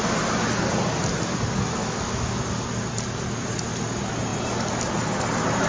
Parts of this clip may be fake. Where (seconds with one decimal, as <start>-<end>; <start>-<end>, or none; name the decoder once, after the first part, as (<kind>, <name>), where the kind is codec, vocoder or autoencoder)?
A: 1.8-2.4 (autoencoder, DAC-VAE)